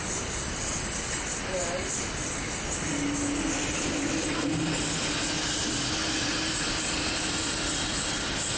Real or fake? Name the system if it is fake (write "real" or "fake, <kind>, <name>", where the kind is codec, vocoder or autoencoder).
real